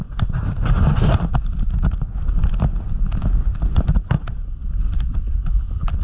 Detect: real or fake real